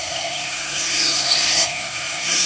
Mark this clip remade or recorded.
remade